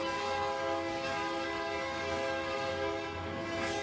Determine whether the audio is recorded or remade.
remade